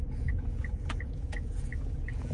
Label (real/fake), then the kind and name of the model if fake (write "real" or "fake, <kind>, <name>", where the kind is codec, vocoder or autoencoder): fake, vocoder, Vocos